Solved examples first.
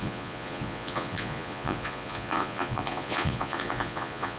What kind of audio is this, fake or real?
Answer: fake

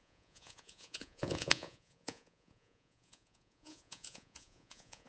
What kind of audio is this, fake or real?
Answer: fake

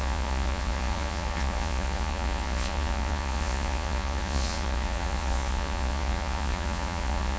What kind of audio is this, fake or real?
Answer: fake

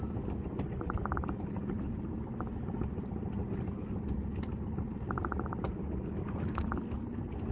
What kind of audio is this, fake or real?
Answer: real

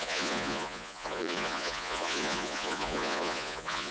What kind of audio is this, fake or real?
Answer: fake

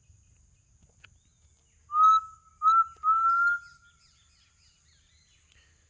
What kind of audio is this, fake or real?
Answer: real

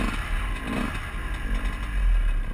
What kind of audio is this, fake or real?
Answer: real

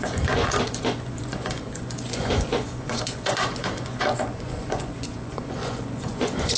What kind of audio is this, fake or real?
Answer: fake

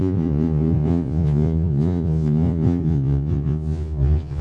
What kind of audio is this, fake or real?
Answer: fake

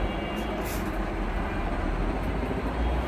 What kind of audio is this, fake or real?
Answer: real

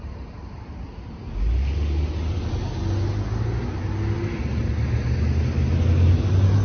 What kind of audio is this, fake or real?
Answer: real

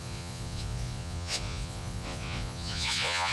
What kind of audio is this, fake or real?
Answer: fake